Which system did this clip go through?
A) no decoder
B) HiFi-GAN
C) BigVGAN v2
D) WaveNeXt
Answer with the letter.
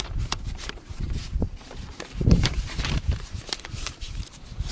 C